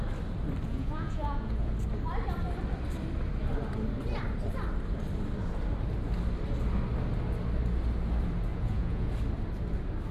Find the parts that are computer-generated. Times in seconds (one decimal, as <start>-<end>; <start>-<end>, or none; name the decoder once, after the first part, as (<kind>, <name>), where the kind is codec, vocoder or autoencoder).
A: 0.7-1.7 (vocoder, Vocos); 8.5-9.1

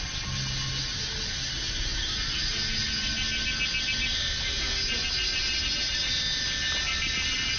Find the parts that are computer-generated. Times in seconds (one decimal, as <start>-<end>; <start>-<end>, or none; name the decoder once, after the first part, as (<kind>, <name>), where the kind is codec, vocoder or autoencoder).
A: none